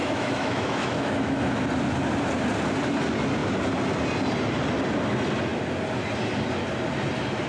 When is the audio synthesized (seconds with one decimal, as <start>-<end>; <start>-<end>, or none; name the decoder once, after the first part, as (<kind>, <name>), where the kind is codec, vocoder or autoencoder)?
0.0-1.6 (autoencoder, DAC-VAE)

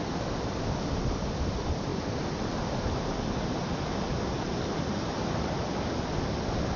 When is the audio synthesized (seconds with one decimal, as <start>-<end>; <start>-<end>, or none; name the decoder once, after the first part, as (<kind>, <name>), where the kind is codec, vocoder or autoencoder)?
none

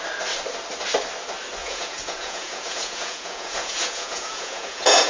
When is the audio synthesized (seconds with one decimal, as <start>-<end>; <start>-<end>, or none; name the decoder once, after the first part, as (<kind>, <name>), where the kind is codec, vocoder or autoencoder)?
1.6-5.1 (vocoder, Vocos)

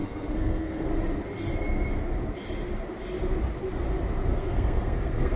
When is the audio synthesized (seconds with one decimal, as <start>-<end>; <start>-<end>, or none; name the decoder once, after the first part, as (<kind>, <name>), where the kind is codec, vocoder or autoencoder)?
0.0-0.9 (codec, SNAC); 4.3-5.4

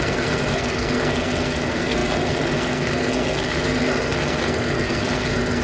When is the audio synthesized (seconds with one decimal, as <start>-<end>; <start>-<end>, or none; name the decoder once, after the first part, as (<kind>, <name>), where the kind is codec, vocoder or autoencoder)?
0.0-5.6 (codec, SNAC)

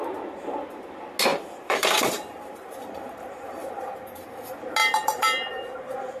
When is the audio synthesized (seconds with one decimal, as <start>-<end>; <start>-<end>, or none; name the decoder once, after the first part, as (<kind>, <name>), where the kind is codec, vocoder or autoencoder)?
1.3-3.8 (vocoder, BigVGAN v2); 4.8-5.5

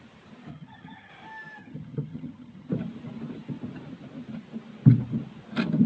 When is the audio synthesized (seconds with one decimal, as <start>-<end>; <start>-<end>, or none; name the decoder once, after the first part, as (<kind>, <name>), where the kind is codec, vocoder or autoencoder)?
0.5-1.1 (vocoder, HiFi-GAN); 1.6-2.7